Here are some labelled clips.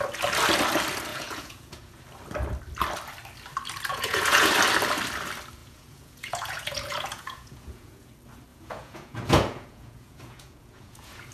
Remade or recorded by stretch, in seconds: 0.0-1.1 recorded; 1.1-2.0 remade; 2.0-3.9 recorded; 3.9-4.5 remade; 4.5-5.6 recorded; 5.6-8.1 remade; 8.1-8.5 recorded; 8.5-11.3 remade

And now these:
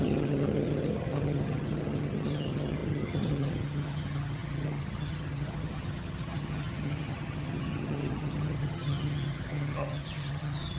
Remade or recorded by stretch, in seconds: 0.0-10.8 remade

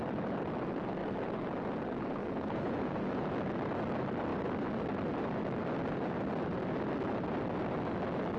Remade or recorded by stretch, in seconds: 0.0-2.2 recorded; 2.2-3.2 remade; 3.2-8.4 recorded

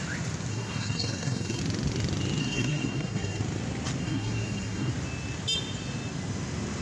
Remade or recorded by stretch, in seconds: 0.0-0.5 recorded; 0.5-1.6 remade; 1.6-2.4 recorded; 2.4-3.4 remade; 3.4-4.0 recorded; 4.0-4.9 remade; 4.9-6.8 recorded

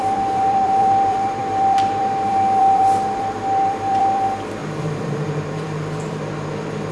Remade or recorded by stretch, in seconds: 0.0-6.9 remade

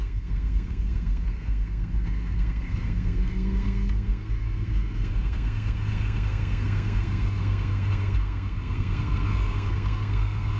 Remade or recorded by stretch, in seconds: 0.0-10.6 remade

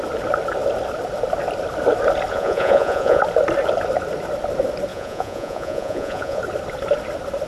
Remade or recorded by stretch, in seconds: 0.0-2.3 recorded; 2.3-3.2 remade; 3.2-4.9 recorded; 4.9-6.4 remade; 6.4-7.5 recorded

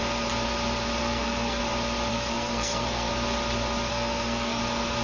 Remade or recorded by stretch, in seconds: 0.0-1.0 recorded; 1.0-1.6 remade; 1.6-2.1 recorded; 2.1-3.1 remade; 3.1-3.9 recorded; 3.9-4.6 remade; 4.6-5.0 recorded